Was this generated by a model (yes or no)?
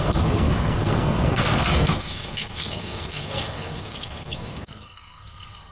yes